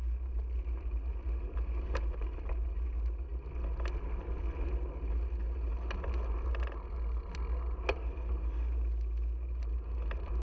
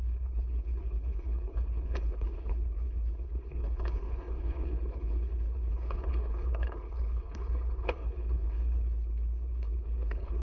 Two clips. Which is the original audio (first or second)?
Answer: first